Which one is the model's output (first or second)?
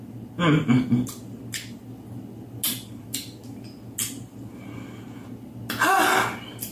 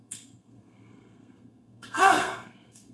second